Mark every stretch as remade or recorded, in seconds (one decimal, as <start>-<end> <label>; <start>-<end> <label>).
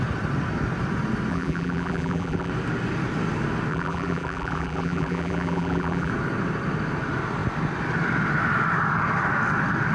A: 0.0-1.3 recorded; 1.3-2.5 remade; 2.5-3.7 recorded; 3.7-6.1 remade; 6.1-9.9 recorded